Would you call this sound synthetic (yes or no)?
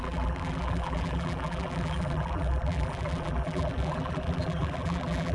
yes